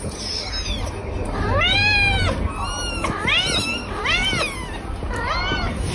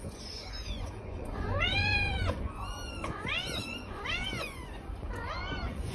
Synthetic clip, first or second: second